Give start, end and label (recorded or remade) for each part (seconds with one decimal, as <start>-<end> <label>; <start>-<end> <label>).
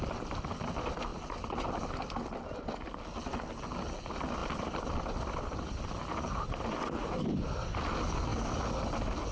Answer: 0.0-1.1 recorded; 1.1-3.0 remade; 3.0-4.4 recorded; 4.4-7.7 remade; 7.7-9.3 recorded